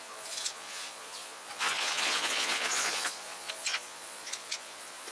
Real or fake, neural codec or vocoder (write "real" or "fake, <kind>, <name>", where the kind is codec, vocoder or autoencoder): fake, vocoder, Vocos